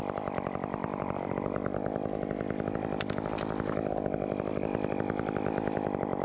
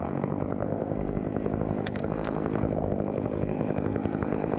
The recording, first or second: first